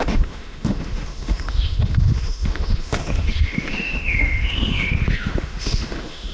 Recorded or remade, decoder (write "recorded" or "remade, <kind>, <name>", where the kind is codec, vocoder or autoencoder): remade, autoencoder, DAC-VAE